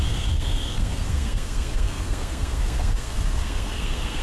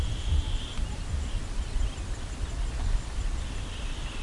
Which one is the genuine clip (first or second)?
second